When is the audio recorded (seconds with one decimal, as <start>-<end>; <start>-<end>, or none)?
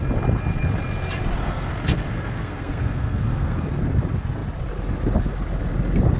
0.0-1.4; 3.7-6.2